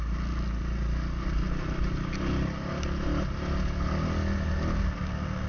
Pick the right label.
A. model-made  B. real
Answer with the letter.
B